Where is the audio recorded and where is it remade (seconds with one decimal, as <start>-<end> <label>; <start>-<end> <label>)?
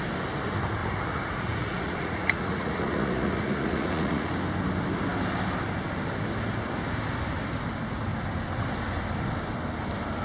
0.0-0.8 recorded; 0.8-4.3 remade; 4.3-10.2 recorded